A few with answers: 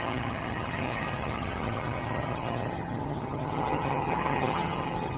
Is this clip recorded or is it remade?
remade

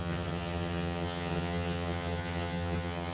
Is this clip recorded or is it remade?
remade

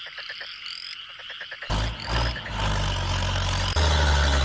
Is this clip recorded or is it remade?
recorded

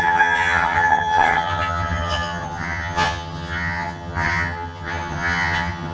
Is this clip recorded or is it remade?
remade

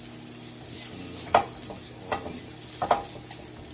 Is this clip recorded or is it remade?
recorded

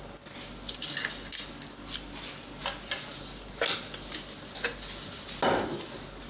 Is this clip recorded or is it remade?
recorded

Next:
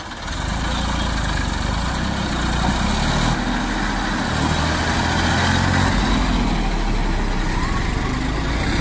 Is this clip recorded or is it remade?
recorded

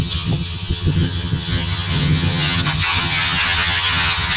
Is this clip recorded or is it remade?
remade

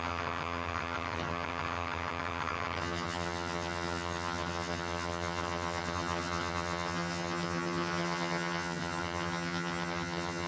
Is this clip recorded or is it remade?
remade